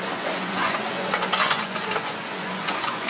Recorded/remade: remade